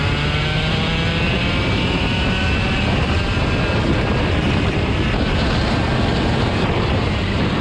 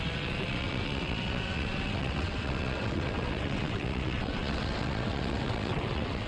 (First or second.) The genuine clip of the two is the first